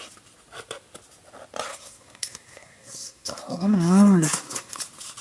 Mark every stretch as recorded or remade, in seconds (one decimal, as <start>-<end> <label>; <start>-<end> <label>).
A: 0.0-1.7 recorded; 1.7-4.8 remade; 4.8-5.2 recorded